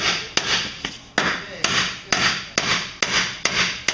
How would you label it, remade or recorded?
recorded